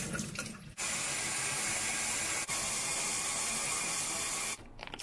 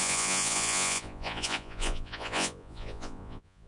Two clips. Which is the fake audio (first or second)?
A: second